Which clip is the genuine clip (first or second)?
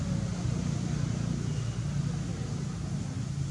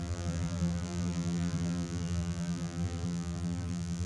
first